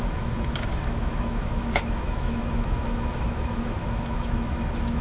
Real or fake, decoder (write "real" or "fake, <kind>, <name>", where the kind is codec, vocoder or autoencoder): fake, autoencoder, DAC-VAE